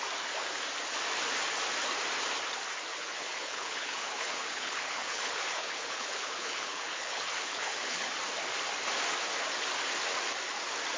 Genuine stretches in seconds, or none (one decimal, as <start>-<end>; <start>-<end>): 0.0-2.9; 8.1-11.0